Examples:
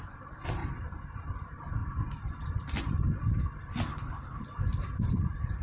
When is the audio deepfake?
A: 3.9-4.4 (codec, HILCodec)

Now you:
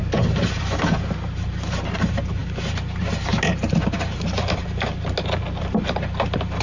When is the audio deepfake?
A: none